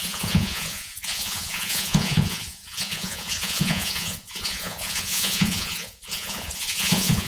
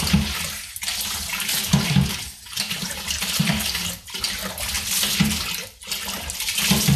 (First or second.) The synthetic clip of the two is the first